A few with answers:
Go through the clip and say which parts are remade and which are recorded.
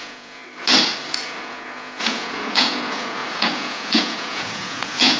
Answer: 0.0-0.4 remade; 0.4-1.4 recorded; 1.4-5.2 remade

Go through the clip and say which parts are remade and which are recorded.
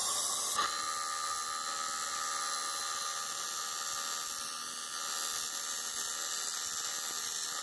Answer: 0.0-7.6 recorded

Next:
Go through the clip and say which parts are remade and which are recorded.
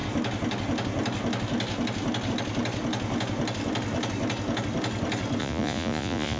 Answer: 0.0-5.4 recorded; 5.4-6.4 remade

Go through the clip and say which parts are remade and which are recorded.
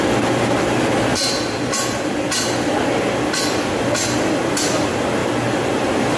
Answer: 0.0-6.2 recorded